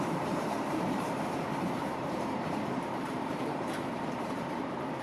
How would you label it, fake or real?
fake